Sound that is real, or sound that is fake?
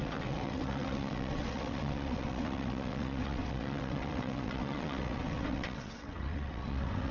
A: fake